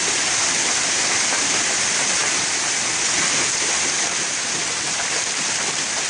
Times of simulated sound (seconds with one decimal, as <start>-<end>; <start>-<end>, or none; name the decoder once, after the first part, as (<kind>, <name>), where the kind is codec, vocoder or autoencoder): 0.0-2.2 (vocoder, BigVGAN v2); 4.9-6.1